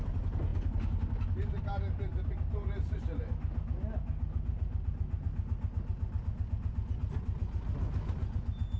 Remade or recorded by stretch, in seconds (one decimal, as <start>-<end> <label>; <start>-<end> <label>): 0.0-8.8 recorded